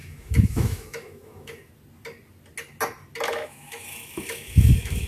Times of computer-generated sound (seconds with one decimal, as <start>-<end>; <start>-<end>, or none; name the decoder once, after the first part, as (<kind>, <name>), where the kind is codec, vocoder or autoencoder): 0.0-1.7 (autoencoder, DAC-VAE); 3.3-5.1